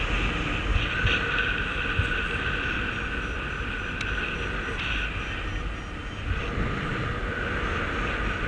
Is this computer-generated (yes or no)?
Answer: no